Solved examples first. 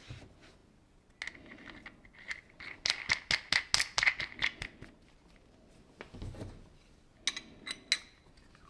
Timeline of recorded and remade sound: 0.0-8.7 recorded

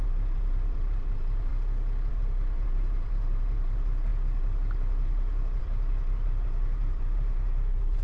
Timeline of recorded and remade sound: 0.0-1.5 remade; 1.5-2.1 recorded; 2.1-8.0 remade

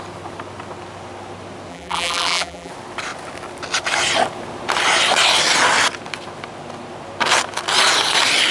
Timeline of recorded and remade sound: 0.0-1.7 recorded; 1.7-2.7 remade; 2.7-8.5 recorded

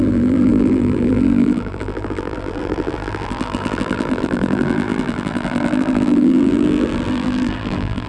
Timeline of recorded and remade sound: 0.0-8.1 remade

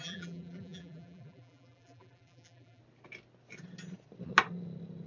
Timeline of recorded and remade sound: 0.0-2.8 remade; 2.8-5.1 recorded

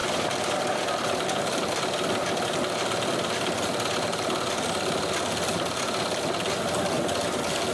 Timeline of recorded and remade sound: 0.0-1.7 remade; 1.7-7.7 recorded

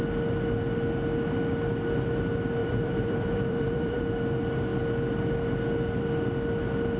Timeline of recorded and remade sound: 0.0-2.6 recorded; 2.6-4.0 remade; 4.0-7.0 recorded